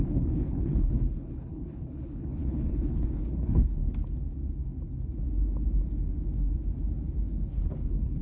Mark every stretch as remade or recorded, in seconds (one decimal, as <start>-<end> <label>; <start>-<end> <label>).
0.0-3.8 remade; 3.8-7.5 recorded; 7.5-8.2 remade